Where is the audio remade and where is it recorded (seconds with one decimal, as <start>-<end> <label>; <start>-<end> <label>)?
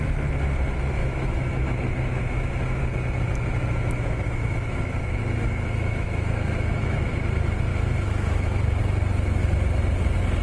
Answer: 0.0-1.0 recorded; 1.0-2.8 remade; 2.8-3.5 recorded; 3.5-7.1 remade; 7.1-7.7 recorded; 7.7-8.8 remade; 8.8-10.4 recorded